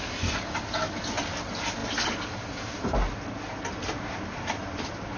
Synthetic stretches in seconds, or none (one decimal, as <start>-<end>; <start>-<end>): none